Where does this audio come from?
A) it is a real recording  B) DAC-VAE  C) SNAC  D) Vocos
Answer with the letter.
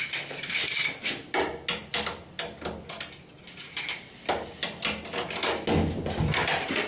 A